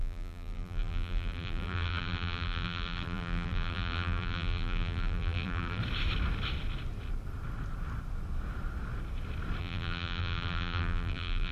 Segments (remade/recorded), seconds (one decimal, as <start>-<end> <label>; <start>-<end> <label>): 0.0-5.8 remade; 5.8-9.6 recorded; 9.6-11.5 remade